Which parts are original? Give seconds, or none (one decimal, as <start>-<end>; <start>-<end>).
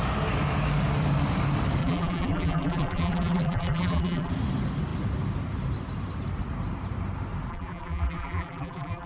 0.0-1.8; 4.3-7.5